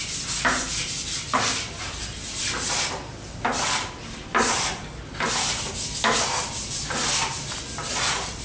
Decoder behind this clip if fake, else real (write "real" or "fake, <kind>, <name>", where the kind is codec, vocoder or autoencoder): real